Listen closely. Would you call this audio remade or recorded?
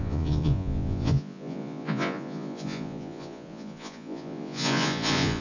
remade